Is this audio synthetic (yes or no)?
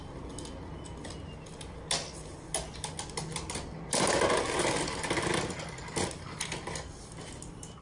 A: no